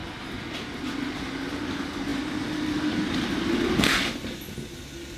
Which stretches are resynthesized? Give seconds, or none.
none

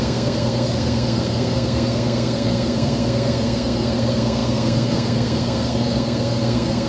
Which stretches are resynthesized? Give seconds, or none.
0.0-6.9

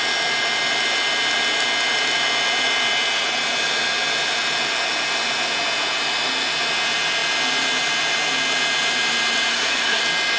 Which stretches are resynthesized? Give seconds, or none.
9.5-10.0

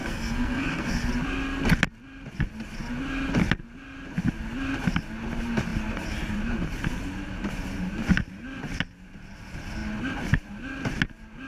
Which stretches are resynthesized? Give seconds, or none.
0.0-1.1